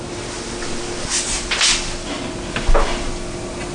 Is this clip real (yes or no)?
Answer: yes